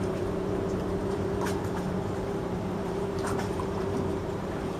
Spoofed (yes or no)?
yes